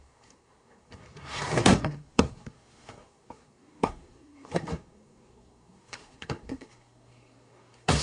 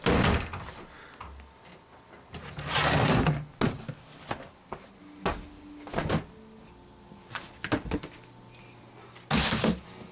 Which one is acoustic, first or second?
second